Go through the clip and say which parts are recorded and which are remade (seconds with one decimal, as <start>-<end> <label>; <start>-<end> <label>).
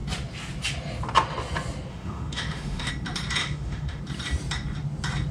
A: 0.0-1.9 recorded; 1.9-2.9 remade; 2.9-3.4 recorded; 3.4-4.0 remade; 4.0-5.3 recorded